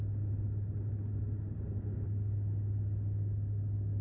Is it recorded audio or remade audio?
recorded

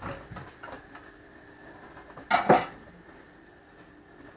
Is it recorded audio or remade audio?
recorded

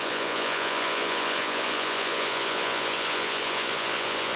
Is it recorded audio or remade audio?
remade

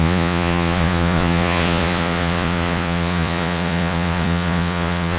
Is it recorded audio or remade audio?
remade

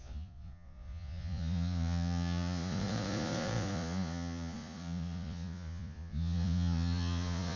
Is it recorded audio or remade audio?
remade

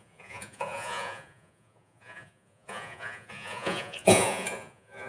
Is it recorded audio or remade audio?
remade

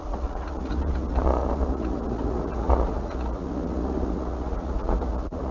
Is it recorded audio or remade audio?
remade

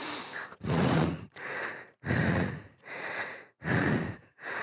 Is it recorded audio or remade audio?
remade